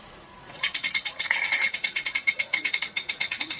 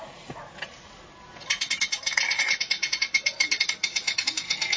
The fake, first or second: first